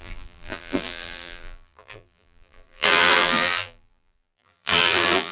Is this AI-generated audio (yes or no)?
yes